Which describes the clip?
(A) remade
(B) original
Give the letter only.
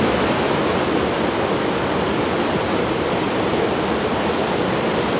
B